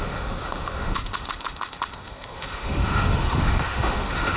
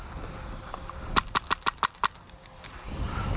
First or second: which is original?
second